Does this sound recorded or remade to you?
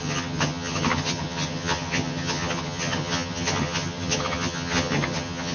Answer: remade